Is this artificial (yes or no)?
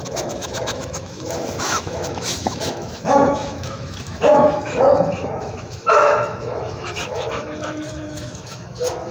yes